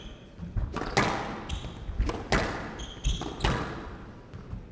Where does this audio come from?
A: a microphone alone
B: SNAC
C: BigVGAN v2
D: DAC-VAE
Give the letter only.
A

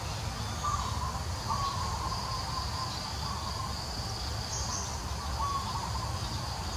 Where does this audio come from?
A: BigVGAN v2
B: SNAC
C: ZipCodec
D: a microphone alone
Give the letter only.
D